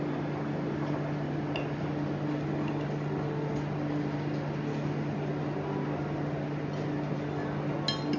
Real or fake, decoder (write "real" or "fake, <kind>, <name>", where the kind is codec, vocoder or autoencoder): real